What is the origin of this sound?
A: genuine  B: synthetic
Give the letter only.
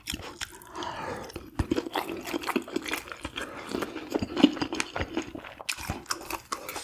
A